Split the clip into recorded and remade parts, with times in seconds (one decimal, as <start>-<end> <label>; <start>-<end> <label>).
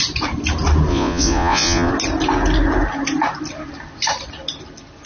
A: 0.0-0.9 recorded; 0.9-1.9 remade; 1.9-5.1 recorded